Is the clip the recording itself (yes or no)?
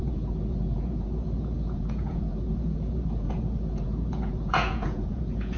no